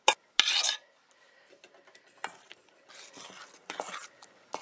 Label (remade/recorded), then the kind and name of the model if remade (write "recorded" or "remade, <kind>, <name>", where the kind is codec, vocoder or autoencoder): recorded